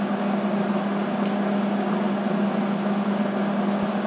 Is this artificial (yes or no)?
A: no